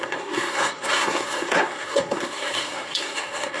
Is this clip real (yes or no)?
no